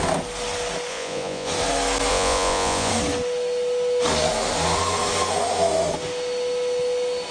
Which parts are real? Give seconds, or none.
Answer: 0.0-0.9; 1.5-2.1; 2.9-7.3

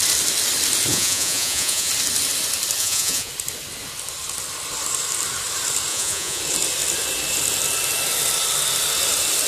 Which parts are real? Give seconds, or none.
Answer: 0.0-0.9; 1.9-2.8; 3.3-5.9; 6.4-9.5

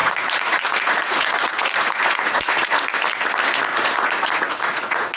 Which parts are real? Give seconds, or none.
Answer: 2.8-3.7